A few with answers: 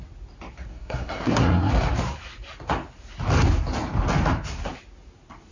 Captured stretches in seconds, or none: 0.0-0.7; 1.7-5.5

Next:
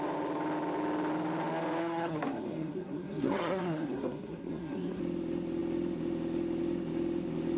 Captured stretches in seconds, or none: 0.0-1.8; 5.0-7.6

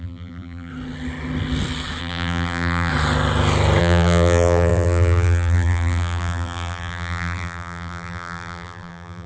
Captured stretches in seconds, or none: 0.7-2.0; 2.9-3.8

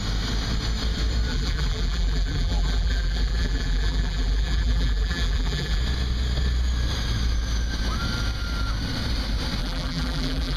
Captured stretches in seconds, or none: 0.0-1.3; 5.8-9.6

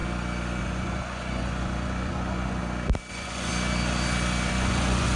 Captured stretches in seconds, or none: 0.0-0.6; 2.6-3.1; 3.5-4.5

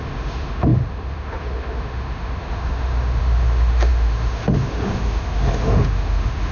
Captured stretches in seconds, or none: none